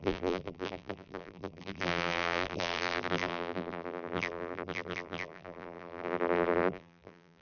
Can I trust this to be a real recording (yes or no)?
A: no